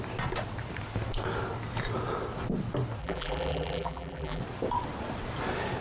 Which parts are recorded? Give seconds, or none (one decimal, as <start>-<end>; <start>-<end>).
0.0-3.0; 4.4-5.8